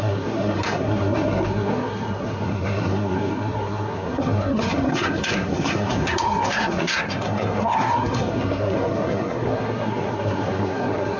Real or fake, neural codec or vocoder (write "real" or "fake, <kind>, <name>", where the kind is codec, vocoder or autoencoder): fake, codec, SNAC